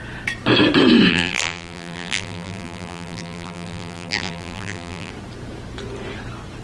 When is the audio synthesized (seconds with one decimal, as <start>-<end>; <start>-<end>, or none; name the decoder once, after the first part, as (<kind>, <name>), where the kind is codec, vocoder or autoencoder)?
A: 1.1-5.1 (vocoder, BigVGAN v2)